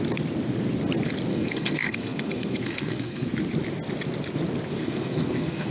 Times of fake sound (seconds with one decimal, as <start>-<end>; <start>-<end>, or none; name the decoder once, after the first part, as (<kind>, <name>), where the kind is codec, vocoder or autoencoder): 1.3-3.3 (codec, SNAC); 4.7-5.7